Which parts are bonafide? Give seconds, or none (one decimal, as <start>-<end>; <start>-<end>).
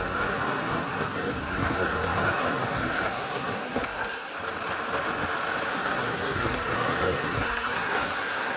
4.3-5.7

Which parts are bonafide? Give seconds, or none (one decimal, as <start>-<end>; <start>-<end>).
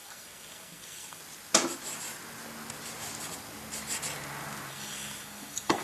1.2-4.7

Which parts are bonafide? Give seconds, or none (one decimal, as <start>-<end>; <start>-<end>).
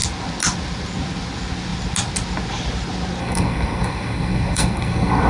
0.0-3.2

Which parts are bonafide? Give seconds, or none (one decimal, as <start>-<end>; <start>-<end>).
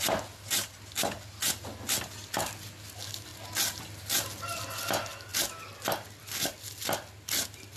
0.0-7.8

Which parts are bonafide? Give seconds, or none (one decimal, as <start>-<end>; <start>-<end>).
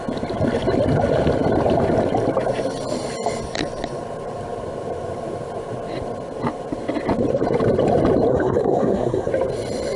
0.0-8.3; 9.3-10.0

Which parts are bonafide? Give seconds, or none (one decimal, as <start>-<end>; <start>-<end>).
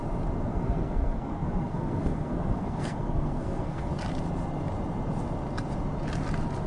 0.0-0.5; 3.9-6.7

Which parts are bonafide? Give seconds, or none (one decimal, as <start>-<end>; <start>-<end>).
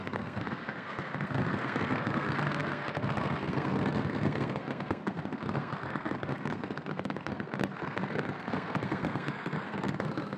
none